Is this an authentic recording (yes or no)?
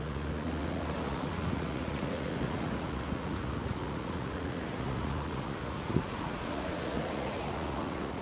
no